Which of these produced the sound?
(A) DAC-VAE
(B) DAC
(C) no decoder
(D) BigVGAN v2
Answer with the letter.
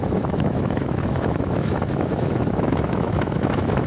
A